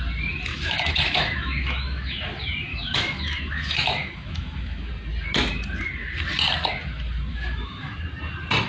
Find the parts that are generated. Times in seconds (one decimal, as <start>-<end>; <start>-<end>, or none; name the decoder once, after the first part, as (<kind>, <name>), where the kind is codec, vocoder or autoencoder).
0.5-2.2 (autoencoder, DAC-VAE); 2.7-4.9; 7.3-8.0